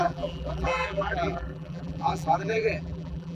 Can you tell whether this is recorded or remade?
remade